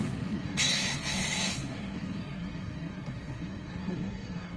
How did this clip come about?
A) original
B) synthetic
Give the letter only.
B